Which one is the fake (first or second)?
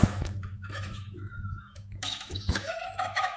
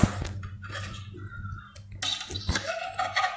first